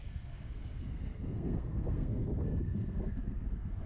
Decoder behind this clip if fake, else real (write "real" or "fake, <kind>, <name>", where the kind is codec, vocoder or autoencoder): fake, codec, SNAC